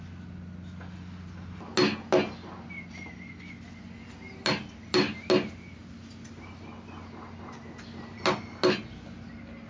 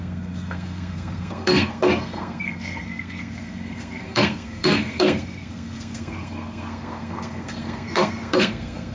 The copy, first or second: second